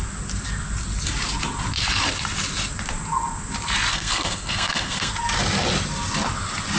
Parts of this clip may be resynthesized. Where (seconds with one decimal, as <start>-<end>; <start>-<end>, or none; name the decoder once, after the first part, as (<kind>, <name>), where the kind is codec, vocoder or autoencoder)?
3.9-5.1 (codec, SNAC)